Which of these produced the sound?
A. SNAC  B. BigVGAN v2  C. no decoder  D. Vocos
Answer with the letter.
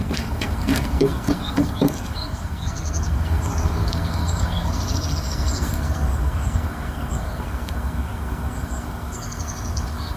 A